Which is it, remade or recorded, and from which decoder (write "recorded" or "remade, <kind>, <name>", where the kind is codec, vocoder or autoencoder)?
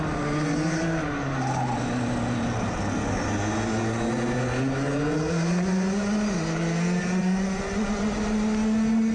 recorded